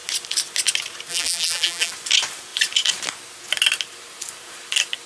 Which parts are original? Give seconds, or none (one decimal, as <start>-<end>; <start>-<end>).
0.0-1.1; 1.9-5.1